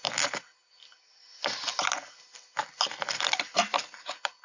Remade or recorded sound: recorded